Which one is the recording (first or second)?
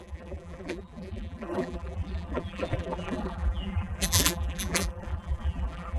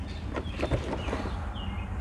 second